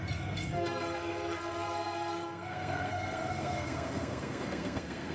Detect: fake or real fake